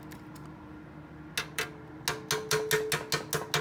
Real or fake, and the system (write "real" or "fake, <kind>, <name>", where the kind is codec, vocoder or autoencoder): real